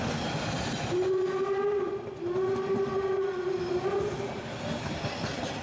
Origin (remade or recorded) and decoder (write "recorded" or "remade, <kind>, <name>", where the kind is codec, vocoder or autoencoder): recorded